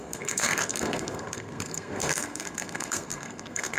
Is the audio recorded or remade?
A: remade